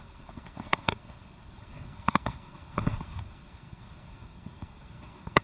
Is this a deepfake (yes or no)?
yes